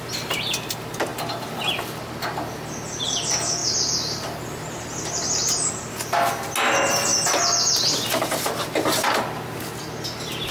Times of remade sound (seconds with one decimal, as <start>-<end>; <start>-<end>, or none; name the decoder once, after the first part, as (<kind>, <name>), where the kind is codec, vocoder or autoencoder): 3.6-5.7 (vocoder, BigVGAN v2)